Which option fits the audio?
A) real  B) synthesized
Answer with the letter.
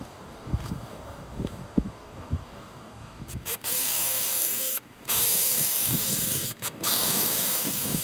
B